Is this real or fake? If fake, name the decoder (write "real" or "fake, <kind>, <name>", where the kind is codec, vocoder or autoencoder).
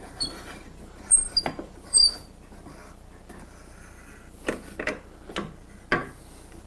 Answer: real